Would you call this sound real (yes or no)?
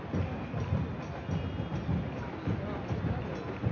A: yes